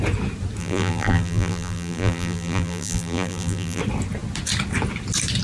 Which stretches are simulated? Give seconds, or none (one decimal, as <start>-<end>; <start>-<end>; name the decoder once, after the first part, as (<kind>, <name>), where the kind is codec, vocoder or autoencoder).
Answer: 0.6-3.8 (vocoder, BigVGAN v2)